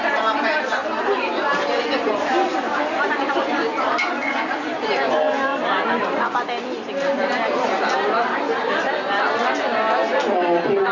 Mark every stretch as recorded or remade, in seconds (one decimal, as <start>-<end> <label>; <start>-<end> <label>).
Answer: 0.0-10.9 recorded